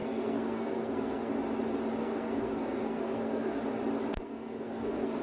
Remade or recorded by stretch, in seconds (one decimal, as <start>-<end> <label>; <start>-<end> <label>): 0.0-1.3 remade; 1.3-2.0 recorded; 2.0-3.6 remade; 3.6-4.1 recorded; 4.1-5.2 remade